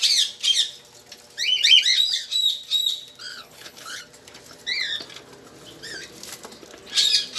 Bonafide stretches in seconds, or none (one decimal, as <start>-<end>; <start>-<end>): 0.0-3.3; 4.0-7.4